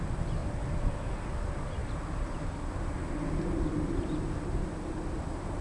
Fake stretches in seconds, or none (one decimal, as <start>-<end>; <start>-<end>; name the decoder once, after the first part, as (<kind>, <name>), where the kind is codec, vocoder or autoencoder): 0.4-1.0 (vocoder, BigVGAN v2)